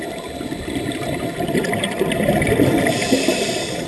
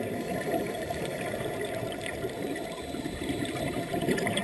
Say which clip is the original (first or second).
first